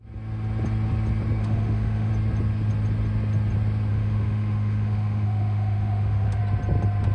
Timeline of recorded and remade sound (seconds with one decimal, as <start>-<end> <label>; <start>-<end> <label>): 0.0-1.4 recorded; 1.4-2.1 remade; 2.1-3.9 recorded; 3.9-6.4 remade; 6.4-7.1 recorded